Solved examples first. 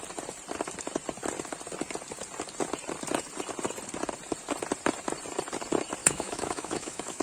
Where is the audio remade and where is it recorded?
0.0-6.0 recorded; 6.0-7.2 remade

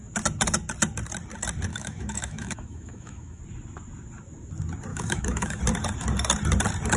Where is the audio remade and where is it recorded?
0.0-1.7 recorded; 1.7-3.4 remade; 3.4-4.9 recorded; 4.9-5.6 remade; 5.6-7.0 recorded

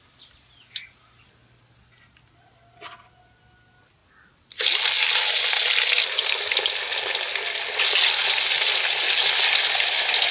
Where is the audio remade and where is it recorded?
0.0-10.3 recorded

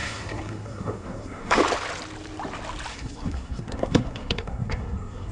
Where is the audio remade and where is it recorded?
0.0-1.6 remade; 1.6-2.9 recorded; 2.9-5.3 remade